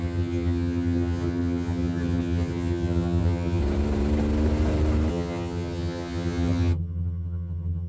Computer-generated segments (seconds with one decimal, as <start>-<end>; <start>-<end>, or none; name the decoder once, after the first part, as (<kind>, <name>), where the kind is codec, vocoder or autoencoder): 0.0-3.6 (vocoder, HiFi-GAN); 5.1-7.9